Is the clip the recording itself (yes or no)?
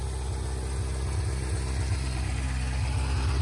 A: yes